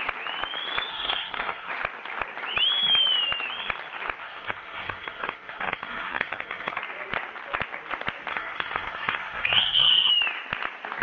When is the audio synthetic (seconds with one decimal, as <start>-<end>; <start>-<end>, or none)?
0.9-1.7; 4.2-6.8; 8.3-10.1

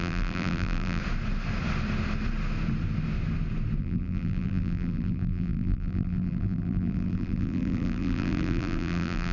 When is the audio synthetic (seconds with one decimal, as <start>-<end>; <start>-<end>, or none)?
0.0-1.0; 3.8-9.3

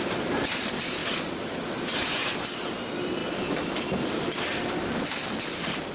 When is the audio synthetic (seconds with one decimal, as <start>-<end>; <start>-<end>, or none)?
none

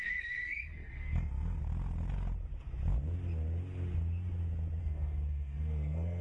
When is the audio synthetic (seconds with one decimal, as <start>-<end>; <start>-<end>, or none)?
0.0-1.6; 4.8-6.2